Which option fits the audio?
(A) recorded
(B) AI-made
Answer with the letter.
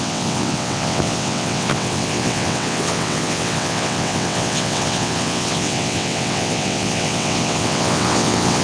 B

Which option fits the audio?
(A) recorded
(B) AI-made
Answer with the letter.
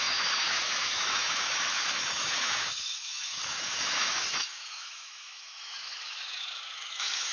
B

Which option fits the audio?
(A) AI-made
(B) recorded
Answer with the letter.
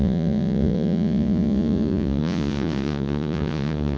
A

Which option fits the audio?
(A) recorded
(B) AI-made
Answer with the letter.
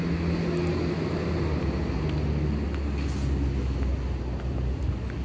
A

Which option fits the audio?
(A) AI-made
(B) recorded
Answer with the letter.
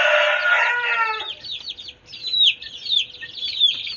B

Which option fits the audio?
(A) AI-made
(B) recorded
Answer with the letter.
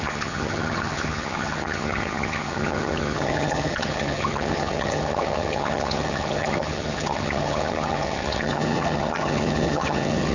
A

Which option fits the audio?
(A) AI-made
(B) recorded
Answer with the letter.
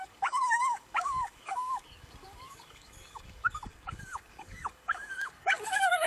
A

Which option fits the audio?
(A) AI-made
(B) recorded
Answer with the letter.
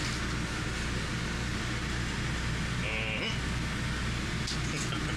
B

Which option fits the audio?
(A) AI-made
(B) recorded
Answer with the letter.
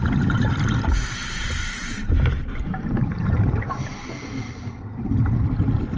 B